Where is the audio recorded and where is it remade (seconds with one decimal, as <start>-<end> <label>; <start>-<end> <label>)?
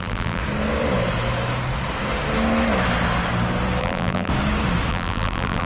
0.0-0.4 remade; 0.4-3.8 recorded; 3.8-4.3 remade; 4.3-4.9 recorded; 4.9-5.6 remade